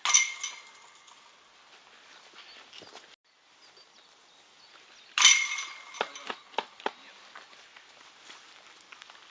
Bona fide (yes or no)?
yes